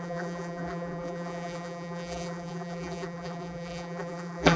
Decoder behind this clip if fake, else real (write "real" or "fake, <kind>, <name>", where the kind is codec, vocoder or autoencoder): fake, vocoder, BigVGAN v2